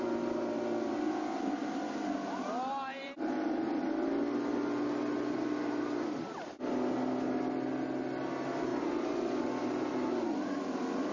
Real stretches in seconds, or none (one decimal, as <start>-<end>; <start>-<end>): 0.0-3.0; 3.8-8.7; 9.9-11.1